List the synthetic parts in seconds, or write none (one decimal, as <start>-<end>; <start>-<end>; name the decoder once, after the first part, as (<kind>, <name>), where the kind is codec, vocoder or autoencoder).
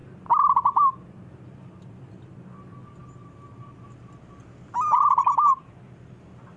none